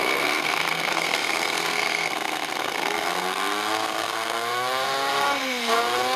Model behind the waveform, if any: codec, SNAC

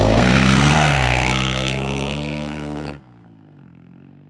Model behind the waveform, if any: codec, SNAC